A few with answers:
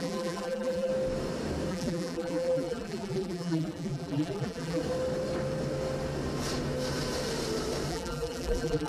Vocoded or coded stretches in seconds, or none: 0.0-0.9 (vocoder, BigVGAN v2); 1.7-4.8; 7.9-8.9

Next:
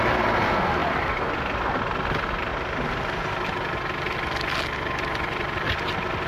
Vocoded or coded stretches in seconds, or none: none

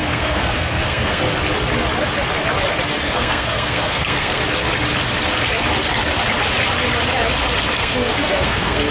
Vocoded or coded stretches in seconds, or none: 0.0-1.2 (codec, SNAC); 3.0-4.4; 7.8-8.9

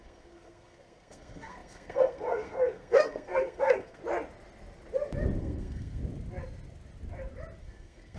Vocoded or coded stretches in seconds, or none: 0.0-4.0 (codec, SNAC); 5.4-6.0; 7.6-8.2